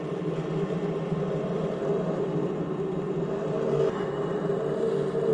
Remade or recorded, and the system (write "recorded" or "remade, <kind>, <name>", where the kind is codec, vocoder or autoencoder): recorded